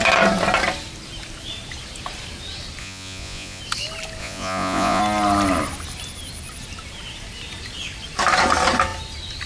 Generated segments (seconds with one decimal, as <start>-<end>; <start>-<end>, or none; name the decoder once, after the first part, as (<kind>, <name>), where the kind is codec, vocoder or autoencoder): 2.8-3.6 (vocoder, Vocos); 4.2-5.0